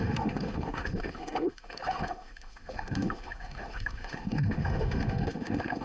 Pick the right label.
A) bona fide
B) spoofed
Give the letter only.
B